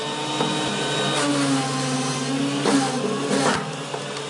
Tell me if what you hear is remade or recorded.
recorded